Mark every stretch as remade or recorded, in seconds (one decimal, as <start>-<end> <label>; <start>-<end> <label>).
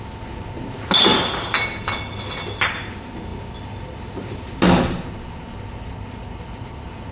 0.0-7.1 recorded